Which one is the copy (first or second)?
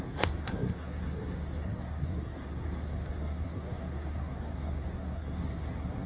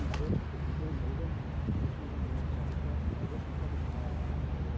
first